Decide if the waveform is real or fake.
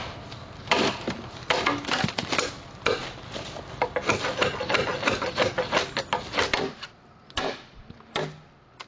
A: real